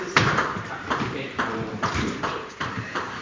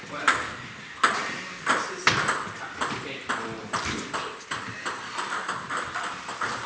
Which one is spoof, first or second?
first